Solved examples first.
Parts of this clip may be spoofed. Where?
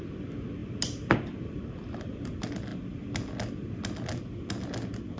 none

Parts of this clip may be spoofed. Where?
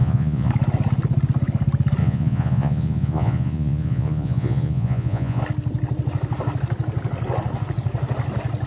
0.0-0.5 (vocoder, Vocos); 2.0-5.4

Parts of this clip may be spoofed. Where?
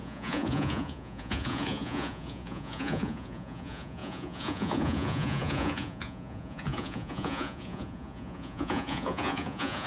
0.0-9.9 (vocoder, Vocos)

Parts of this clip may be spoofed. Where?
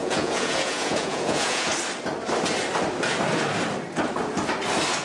0.0-1.7 (vocoder, Vocos)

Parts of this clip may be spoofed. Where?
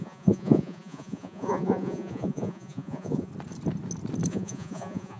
0.0-3.3 (vocoder, Vocos); 4.3-5.2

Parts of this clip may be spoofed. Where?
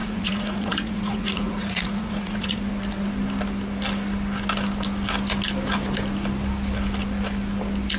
0.0-2.6 (vocoder, Vocos)